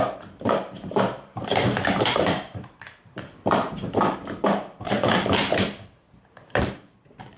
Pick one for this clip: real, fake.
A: fake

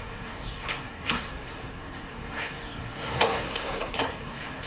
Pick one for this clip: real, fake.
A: fake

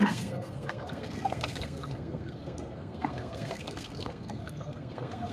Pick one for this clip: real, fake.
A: fake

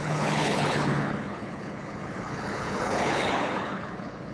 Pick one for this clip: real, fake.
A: fake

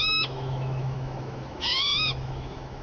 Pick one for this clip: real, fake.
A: fake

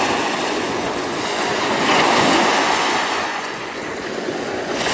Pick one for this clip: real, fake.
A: fake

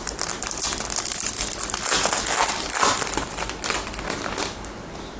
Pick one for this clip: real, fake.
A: real